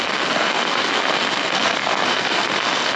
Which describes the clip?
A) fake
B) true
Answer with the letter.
A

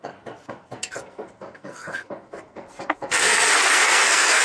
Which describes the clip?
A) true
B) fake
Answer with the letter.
B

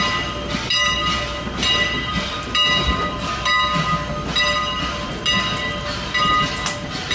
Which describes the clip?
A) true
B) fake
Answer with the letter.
A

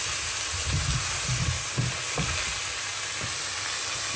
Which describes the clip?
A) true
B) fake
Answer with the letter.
A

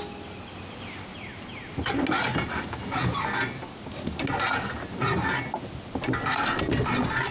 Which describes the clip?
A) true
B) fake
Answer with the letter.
A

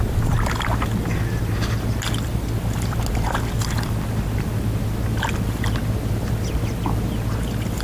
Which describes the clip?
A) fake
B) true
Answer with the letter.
B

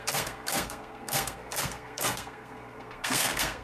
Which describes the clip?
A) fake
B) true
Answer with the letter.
A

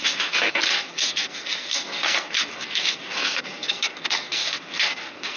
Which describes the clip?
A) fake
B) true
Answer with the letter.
A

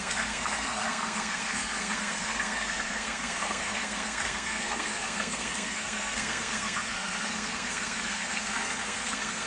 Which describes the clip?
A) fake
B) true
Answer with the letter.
A